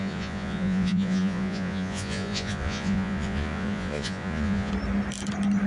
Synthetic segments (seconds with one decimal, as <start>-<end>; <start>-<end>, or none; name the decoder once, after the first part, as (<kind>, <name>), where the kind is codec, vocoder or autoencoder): 0.0-4.7 (vocoder, Vocos)